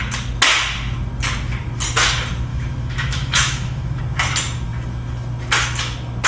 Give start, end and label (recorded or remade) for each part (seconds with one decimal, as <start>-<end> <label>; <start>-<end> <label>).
0.0-2.5 recorded; 2.5-4.0 remade; 4.0-6.3 recorded